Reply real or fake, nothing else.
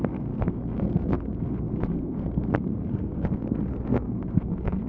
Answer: fake